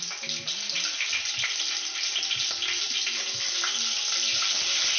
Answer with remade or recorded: recorded